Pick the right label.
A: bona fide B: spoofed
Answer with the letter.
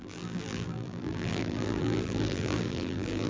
B